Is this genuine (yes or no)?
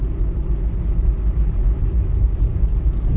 yes